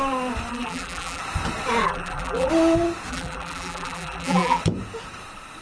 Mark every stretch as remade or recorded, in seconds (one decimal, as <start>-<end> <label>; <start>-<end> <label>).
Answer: 0.0-0.5 recorded; 0.5-1.2 remade; 1.2-1.8 recorded; 1.8-2.5 remade; 2.5-3.1 recorded; 3.1-4.6 remade; 4.6-5.6 recorded